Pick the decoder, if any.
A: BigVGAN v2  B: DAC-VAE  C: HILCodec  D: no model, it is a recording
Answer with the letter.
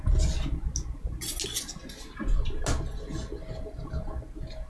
D